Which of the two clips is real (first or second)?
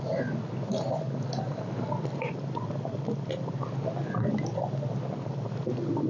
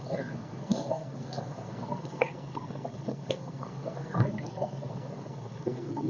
first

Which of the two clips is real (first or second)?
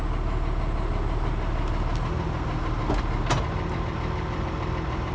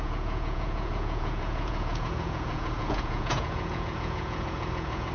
first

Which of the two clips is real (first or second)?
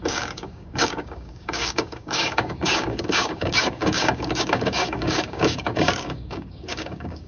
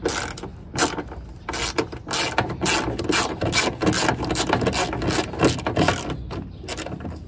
second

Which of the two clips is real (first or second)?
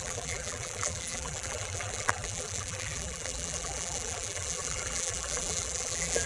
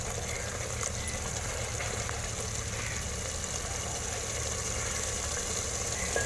second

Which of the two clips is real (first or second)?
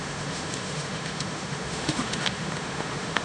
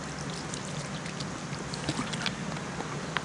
second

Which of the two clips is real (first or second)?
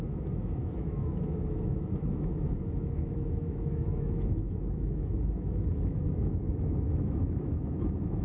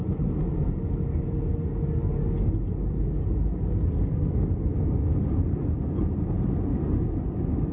second